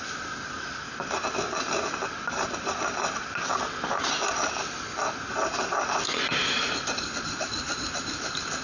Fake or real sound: real